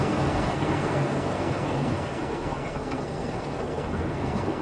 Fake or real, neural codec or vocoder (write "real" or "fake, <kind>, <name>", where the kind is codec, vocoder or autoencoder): fake, codec, SNAC